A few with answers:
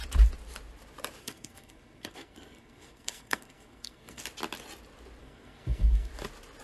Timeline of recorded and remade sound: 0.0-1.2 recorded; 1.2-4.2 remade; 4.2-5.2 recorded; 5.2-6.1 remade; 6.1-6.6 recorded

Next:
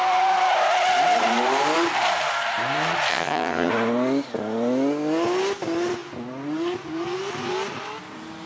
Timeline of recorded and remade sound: 0.0-3.1 recorded; 3.1-3.7 remade; 3.7-8.5 recorded

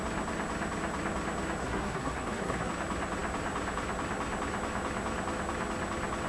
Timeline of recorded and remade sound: 0.0-1.6 recorded; 1.6-2.7 remade; 2.7-6.3 recorded

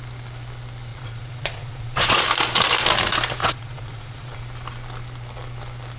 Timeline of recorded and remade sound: 0.0-0.9 recorded; 0.9-2.2 remade; 2.2-3.4 recorded; 3.4-4.4 remade; 4.4-6.0 recorded

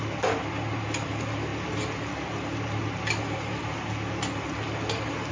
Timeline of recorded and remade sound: 0.0-5.3 recorded

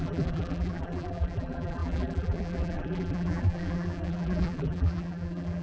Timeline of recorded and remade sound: 0.0-5.6 remade

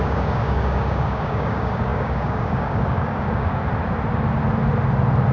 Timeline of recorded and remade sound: 0.0-3.6 remade; 3.6-5.3 recorded